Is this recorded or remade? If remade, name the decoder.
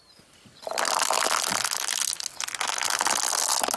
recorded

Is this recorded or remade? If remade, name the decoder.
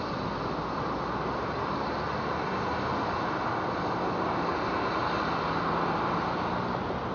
recorded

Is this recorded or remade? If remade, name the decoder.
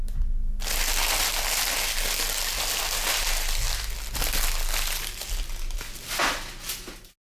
recorded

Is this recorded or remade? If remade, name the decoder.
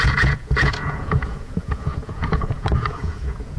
remade, vocoder, Vocos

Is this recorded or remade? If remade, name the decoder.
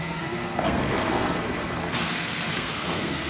remade, codec, SNAC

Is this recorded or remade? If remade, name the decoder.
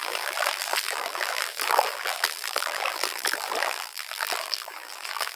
remade, vocoder, BigVGAN v2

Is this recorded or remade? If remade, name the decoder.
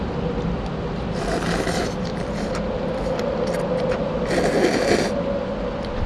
recorded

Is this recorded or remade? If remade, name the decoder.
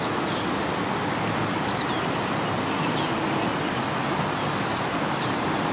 recorded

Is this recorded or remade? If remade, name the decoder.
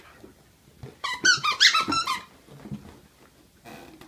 recorded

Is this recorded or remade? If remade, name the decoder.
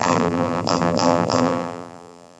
remade, vocoder, BigVGAN v2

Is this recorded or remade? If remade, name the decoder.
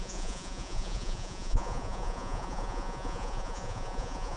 remade, vocoder, Vocos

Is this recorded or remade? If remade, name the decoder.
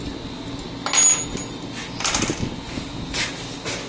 recorded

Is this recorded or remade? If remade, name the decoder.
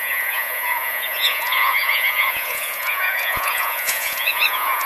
remade, vocoder, Vocos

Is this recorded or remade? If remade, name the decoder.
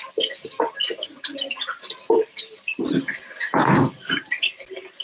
recorded